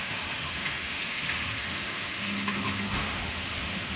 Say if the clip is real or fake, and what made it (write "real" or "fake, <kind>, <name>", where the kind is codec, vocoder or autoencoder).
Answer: fake, autoencoder, DAC-VAE